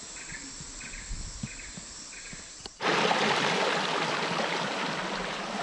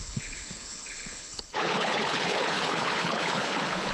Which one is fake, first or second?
second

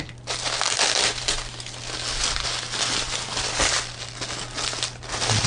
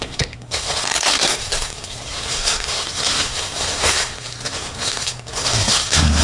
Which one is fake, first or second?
second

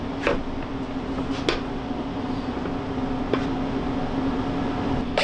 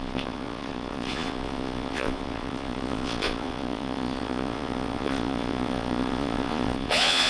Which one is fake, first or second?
second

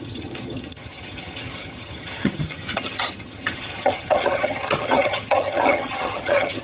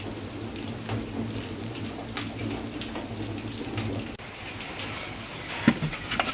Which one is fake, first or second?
first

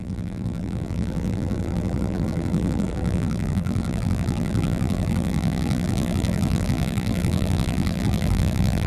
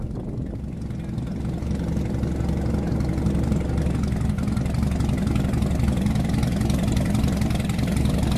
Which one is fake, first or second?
first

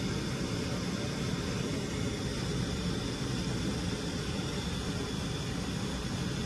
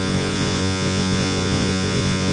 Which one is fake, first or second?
second